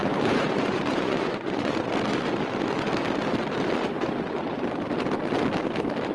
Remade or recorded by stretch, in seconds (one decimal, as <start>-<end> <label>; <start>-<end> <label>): 0.0-1.9 remade; 1.9-6.1 recorded